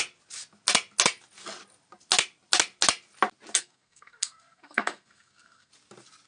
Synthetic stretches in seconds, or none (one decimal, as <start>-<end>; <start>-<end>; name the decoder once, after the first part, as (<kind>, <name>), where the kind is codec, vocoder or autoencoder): 3.6-5.7 (codec, SNAC)